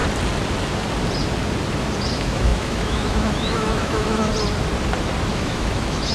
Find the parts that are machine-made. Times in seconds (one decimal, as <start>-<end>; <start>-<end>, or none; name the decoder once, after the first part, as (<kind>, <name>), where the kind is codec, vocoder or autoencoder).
2.1-4.3 (autoencoder, DAC-VAE); 5.3-6.1

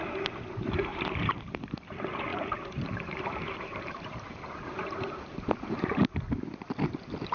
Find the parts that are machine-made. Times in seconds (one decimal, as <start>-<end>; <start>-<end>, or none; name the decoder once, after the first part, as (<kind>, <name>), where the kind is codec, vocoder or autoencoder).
0.9-1.6 (vocoder, BigVGAN v2); 2.3-6.2

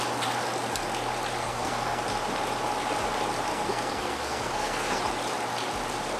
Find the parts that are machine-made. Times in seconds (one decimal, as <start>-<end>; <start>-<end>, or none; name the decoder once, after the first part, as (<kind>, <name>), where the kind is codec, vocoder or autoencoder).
1.4-2.0 (codec, SNAC); 3.5-5.0

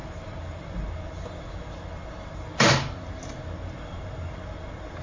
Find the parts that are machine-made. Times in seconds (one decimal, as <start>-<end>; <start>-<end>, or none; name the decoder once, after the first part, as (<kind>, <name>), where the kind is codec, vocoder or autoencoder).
none